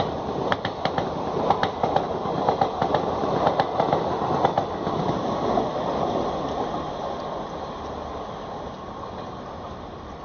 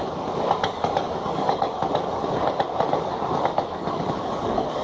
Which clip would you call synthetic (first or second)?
second